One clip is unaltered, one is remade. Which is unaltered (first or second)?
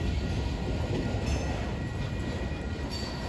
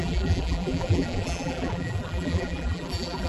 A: first